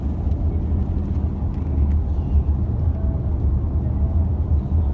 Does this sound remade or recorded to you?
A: recorded